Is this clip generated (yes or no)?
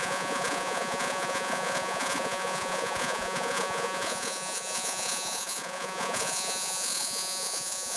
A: yes